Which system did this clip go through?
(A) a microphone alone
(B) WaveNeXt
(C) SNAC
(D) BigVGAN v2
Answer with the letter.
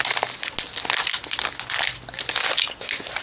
A